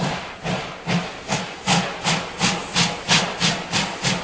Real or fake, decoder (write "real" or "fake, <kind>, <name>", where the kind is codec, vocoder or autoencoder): real